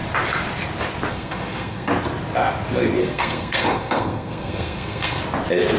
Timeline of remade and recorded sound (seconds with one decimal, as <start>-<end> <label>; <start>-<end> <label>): 0.0-1.1 recorded; 1.1-1.9 remade; 1.9-3.0 recorded; 3.0-5.2 remade; 5.2-5.8 recorded